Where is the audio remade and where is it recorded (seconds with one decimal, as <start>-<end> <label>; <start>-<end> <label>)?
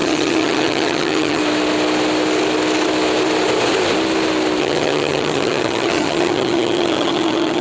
0.0-1.4 remade; 1.4-4.6 recorded; 4.6-7.6 remade